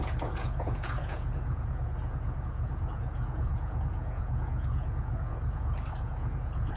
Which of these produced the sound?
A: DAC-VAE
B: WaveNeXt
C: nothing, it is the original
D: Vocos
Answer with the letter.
D